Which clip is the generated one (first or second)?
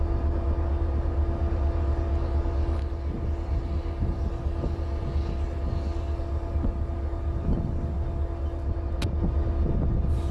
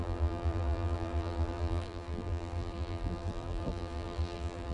second